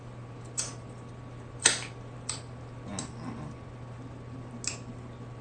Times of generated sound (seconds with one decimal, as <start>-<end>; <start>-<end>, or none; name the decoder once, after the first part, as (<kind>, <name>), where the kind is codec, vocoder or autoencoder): none